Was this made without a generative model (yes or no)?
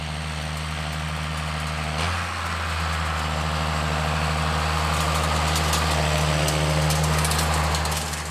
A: yes